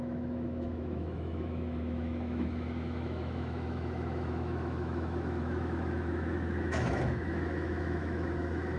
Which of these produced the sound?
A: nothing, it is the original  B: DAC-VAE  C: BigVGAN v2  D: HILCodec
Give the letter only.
B